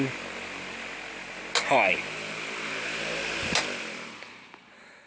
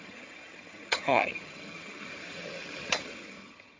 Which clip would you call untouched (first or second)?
first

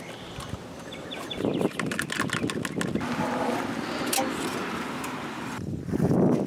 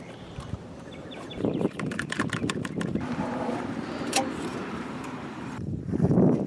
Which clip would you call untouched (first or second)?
first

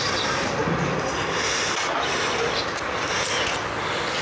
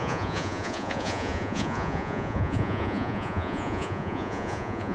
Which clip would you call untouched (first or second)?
first